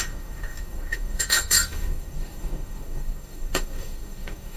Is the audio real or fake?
fake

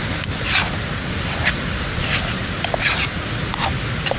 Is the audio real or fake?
real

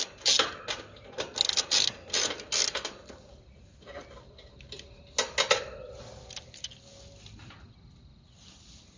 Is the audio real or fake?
real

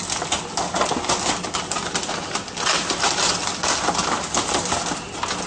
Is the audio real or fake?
real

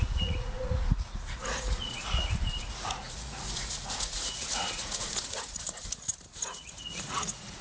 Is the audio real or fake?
fake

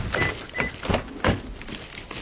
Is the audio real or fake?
real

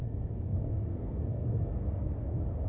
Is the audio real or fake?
fake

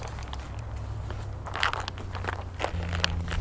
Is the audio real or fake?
real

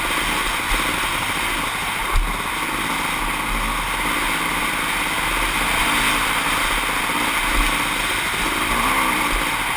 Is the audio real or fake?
real